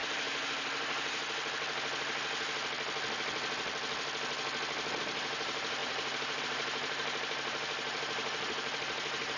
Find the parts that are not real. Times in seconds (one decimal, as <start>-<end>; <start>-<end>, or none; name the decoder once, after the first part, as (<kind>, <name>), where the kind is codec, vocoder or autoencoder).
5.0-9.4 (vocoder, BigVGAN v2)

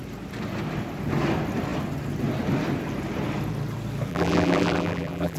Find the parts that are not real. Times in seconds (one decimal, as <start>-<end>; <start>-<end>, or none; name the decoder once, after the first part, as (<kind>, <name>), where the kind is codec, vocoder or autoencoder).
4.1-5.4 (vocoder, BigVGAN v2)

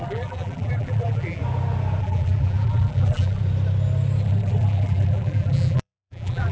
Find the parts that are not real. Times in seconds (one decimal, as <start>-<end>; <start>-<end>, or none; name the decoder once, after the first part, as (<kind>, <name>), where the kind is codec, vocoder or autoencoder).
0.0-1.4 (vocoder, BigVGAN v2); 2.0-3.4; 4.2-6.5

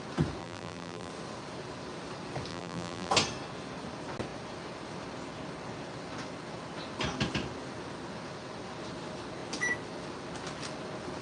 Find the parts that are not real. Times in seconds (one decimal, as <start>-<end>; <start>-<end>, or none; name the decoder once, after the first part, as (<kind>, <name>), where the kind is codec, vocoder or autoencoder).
0.4-1.1 (vocoder, BigVGAN v2); 2.5-3.1

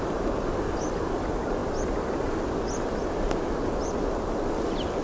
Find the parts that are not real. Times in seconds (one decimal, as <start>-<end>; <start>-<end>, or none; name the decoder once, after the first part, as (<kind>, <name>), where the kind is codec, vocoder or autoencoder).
none